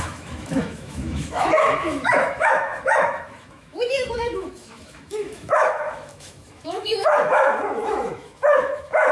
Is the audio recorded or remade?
remade